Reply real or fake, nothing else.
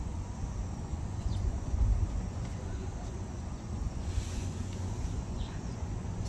fake